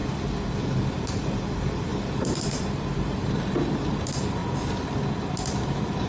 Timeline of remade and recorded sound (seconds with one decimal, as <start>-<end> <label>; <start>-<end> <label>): 0.0-0.9 recorded; 0.9-4.4 remade; 4.4-5.6 recorded; 5.6-6.1 remade